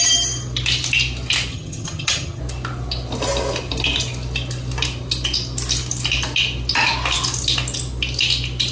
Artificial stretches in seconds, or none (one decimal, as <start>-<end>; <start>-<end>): 1.5-2.4